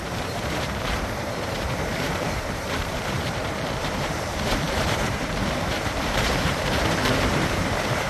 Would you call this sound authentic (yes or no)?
no